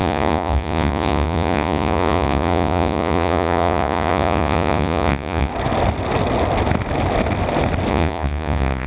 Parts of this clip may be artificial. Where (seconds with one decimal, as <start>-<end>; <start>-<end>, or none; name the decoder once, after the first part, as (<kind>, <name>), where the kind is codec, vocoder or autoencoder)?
0.0-5.5 (vocoder, Vocos); 7.9-8.9